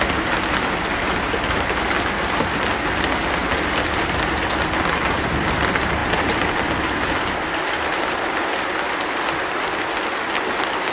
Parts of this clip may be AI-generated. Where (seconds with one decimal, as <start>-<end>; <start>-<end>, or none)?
none